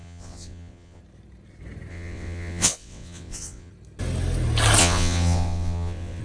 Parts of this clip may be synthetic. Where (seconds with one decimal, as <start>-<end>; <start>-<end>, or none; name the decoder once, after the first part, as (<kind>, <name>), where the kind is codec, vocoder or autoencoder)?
0.0-1.0 (vocoder, WaveNeXt); 1.9-3.7; 4.8-6.2